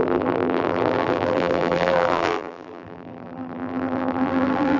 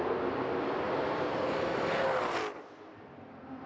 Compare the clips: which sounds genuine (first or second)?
second